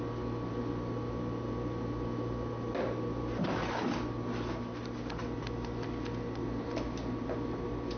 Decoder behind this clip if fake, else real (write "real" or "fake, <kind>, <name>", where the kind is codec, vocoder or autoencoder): real